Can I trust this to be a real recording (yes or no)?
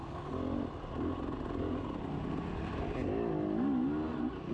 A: yes